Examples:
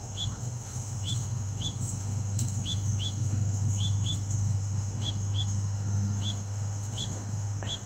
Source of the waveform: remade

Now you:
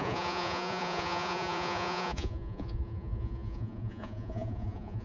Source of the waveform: remade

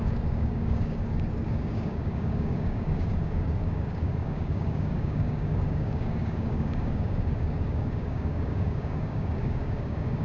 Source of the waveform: remade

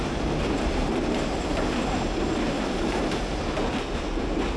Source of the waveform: recorded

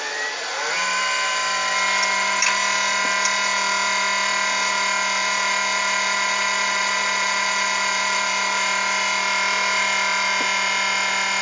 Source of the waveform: recorded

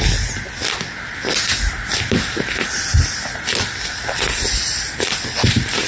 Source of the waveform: recorded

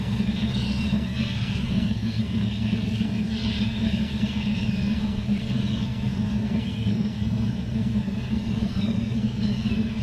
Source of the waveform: remade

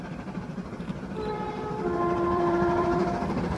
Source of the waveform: remade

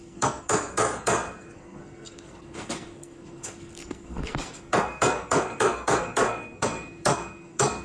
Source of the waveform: remade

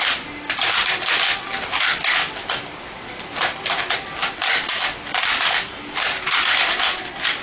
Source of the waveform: remade